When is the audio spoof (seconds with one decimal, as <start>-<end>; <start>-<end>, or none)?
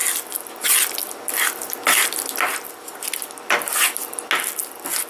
none